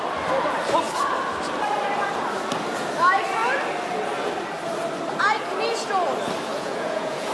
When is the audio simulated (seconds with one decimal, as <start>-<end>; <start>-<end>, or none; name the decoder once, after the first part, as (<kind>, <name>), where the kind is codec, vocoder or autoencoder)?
6.5-7.3 (vocoder, Vocos)